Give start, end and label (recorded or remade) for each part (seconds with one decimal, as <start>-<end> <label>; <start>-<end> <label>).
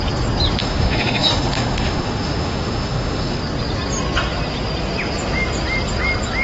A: 0.0-0.6 recorded; 0.6-3.4 remade; 3.4-6.4 recorded